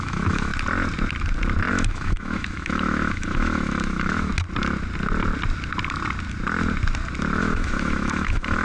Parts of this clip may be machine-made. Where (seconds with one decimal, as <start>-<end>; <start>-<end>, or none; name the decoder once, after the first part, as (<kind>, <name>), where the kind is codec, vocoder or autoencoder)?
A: 0.0-0.5 (autoencoder, DAC-VAE); 1.7-4.3; 7.4-8.6